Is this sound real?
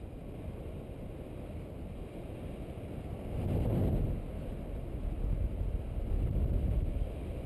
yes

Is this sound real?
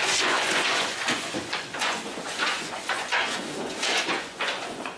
no